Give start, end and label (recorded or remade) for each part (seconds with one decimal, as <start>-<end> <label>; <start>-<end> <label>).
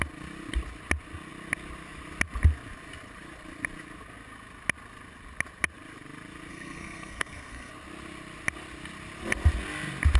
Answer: 0.0-6.5 recorded; 6.5-7.7 remade; 7.7-10.2 recorded